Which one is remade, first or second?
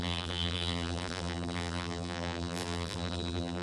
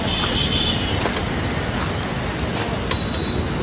first